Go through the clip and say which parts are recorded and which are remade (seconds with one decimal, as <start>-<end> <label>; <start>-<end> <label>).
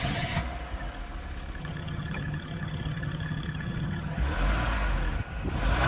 0.0-0.4 remade; 0.4-1.6 recorded; 1.6-4.2 remade; 4.2-5.9 recorded